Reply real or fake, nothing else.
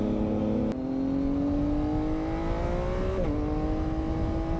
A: real